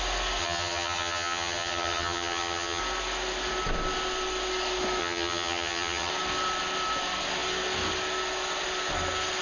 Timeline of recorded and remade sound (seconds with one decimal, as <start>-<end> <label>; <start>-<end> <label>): 0.0-0.4 recorded; 0.4-2.8 remade; 2.8-5.0 recorded; 5.0-6.1 remade; 6.1-9.4 recorded